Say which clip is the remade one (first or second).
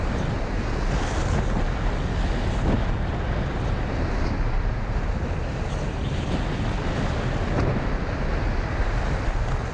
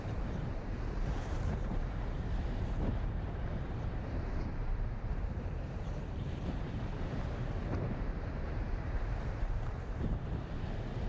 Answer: second